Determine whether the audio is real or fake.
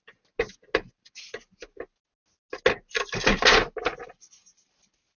real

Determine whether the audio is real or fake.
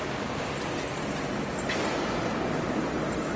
real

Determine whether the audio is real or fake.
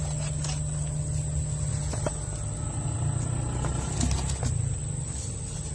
real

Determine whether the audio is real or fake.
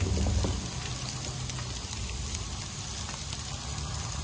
real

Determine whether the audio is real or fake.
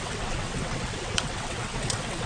fake